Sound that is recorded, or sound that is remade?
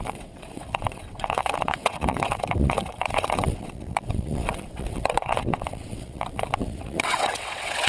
remade